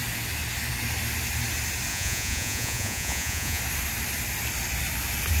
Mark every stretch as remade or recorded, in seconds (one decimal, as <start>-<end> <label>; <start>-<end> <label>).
0.0-1.9 recorded; 1.9-3.6 remade; 3.6-5.4 recorded